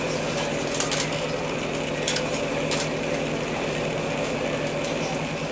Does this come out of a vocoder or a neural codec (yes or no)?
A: no